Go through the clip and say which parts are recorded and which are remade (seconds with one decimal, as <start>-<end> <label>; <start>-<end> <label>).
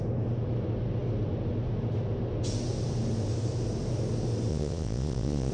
0.0-4.5 recorded; 4.5-5.5 remade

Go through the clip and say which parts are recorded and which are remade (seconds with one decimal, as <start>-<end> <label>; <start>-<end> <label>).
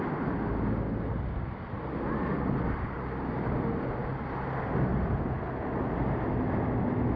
0.0-7.2 recorded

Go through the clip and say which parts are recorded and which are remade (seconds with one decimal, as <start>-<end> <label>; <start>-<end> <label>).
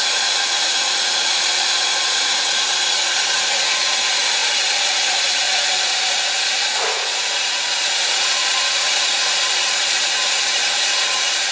0.0-11.5 remade